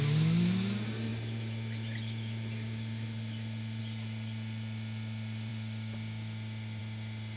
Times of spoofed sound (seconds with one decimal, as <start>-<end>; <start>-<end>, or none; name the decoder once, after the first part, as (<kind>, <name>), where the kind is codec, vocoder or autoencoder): none